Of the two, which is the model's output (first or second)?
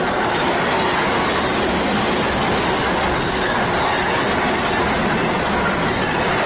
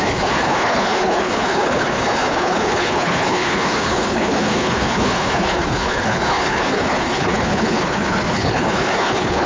second